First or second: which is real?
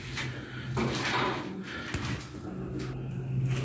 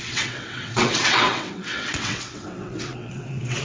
first